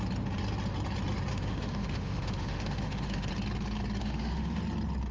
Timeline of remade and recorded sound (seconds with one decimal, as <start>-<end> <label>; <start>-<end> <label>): 0.0-1.3 recorded; 1.3-3.3 remade; 3.3-4.0 recorded; 4.0-4.6 remade; 4.6-5.1 recorded